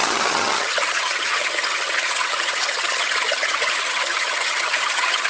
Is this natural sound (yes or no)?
no